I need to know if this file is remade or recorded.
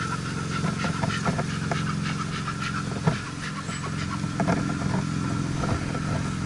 recorded